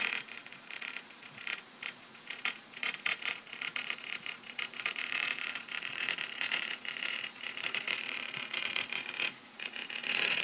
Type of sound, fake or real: fake